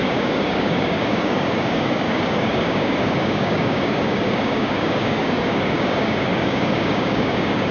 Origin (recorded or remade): remade